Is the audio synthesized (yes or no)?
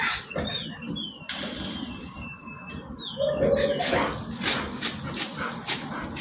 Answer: no